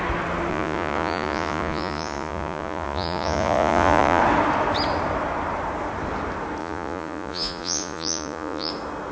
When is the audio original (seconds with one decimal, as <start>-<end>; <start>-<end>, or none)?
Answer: 0.0-0.5; 4.2-6.6; 8.7-9.1